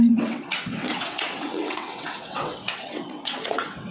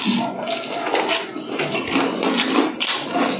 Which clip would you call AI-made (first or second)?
first